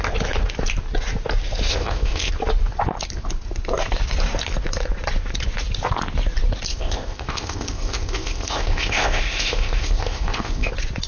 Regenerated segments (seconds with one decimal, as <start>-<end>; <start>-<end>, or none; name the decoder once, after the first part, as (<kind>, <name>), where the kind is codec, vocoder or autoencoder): 1.7-2.3 (codec, ZipCodec); 6.7-10.7